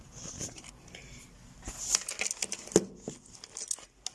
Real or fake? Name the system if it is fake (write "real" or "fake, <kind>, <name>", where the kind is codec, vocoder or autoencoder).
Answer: real